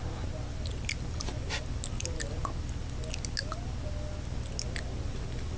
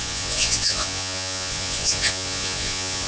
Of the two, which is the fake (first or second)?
second